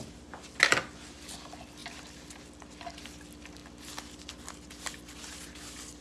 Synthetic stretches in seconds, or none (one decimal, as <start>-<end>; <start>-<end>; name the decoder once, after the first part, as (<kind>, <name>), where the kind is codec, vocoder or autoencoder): none